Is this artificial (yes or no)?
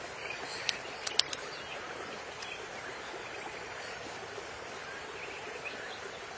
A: no